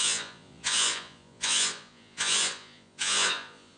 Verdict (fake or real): fake